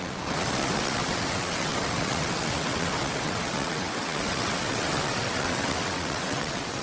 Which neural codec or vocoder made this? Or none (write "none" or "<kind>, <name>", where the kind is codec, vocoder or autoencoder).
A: vocoder, WaveNeXt